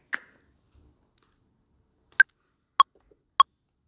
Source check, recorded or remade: recorded